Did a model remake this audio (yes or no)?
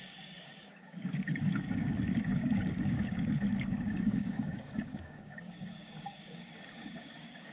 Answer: yes